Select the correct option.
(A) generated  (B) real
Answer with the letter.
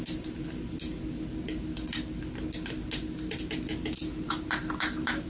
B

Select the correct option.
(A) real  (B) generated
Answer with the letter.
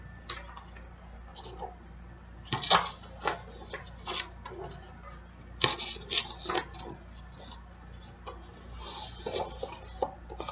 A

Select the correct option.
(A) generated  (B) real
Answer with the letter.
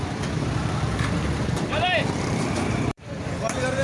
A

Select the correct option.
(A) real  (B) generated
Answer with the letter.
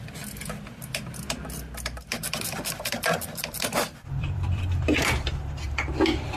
B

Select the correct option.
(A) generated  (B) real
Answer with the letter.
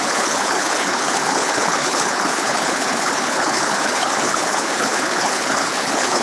A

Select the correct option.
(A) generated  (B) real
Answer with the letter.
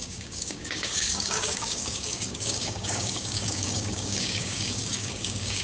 A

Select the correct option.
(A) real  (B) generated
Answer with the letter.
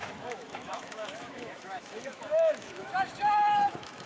B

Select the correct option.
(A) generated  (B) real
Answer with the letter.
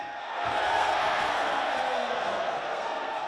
A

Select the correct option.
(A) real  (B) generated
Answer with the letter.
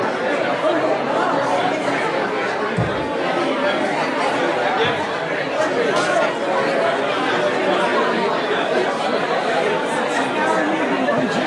A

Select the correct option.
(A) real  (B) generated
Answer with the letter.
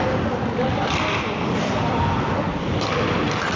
A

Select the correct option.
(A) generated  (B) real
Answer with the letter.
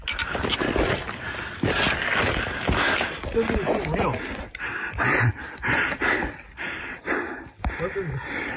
B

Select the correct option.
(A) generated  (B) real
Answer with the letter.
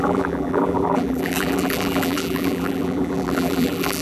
A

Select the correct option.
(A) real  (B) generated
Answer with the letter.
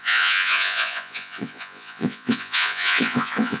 B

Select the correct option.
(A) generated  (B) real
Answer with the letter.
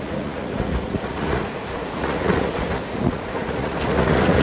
A